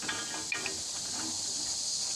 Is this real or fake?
real